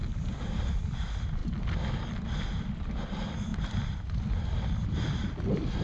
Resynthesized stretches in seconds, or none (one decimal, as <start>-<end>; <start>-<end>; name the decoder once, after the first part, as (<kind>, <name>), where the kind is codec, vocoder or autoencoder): 0.0-0.8 (vocoder, BigVGAN v2); 1.4-2.1